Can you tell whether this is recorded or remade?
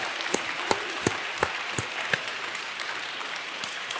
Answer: remade